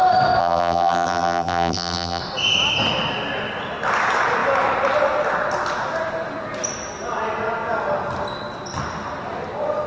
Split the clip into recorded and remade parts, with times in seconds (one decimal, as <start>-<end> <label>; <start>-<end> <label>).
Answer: 0.0-0.4 recorded; 0.4-2.2 remade; 2.2-9.9 recorded